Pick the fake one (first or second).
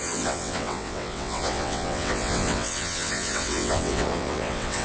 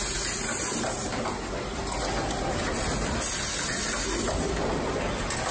first